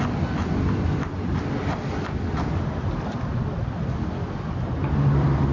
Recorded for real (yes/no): no